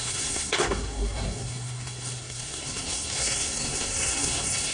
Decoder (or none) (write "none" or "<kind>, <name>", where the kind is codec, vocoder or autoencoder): codec, SNAC